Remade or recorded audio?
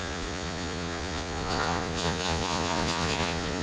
remade